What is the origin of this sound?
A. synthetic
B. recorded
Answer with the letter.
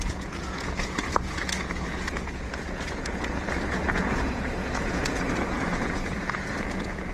A